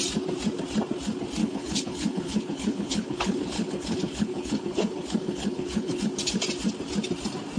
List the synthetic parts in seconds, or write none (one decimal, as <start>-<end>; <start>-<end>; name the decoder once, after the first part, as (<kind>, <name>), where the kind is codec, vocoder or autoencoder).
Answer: 1.4-6.0 (codec, HILCodec)